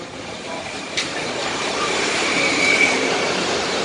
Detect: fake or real fake